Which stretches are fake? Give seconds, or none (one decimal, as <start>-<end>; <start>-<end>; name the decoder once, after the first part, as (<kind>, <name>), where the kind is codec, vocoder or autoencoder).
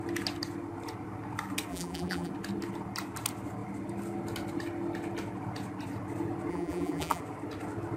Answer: 1.7-2.3 (vocoder, BigVGAN v2); 6.5-7.2